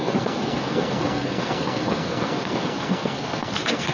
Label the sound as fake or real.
fake